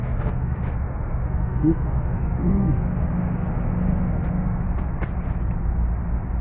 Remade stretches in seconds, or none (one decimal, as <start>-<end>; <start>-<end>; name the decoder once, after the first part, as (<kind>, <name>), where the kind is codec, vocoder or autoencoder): 0.0-2.9 (autoencoder, DAC-VAE); 3.9-4.6